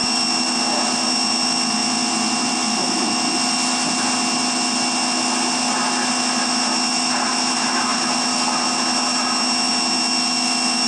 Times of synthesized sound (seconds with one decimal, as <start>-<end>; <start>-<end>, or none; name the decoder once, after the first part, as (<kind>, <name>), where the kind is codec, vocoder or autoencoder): none